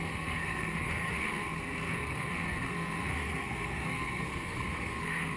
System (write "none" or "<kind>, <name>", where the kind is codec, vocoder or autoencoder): codec, SNAC